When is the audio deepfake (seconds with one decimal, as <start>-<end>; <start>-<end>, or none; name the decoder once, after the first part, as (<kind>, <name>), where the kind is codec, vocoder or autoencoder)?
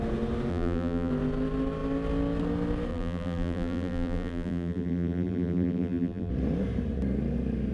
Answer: 0.5-1.1 (vocoder, BigVGAN v2); 2.9-6.3